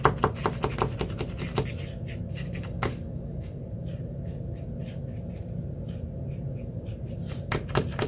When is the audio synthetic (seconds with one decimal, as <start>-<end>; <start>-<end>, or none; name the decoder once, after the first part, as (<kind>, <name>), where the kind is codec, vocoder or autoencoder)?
2.3-3.8 (codec, DAC)